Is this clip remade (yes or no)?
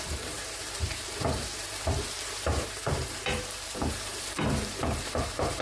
yes